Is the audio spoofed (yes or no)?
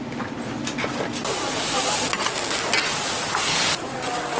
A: no